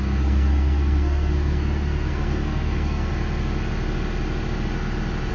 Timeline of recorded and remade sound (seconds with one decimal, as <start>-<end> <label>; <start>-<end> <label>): 0.0-3.1 remade; 3.1-5.3 recorded